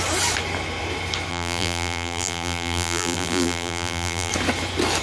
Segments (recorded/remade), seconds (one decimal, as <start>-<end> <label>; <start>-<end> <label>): 0.0-1.3 recorded; 1.3-4.3 remade; 4.3-5.0 recorded